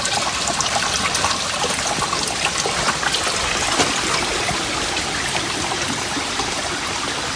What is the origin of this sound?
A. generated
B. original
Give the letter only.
B